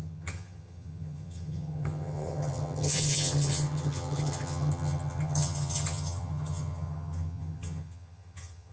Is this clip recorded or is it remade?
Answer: remade